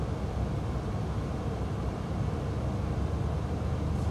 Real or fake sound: real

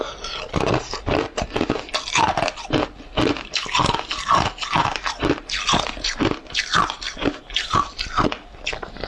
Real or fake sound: real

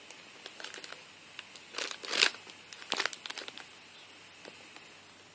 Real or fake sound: real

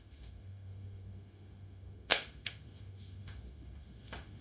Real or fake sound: fake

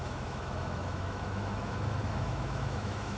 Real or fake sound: fake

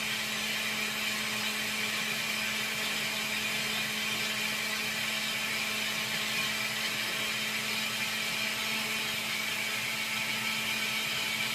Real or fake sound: real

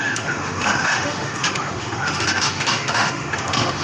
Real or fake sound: fake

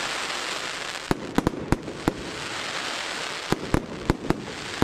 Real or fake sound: real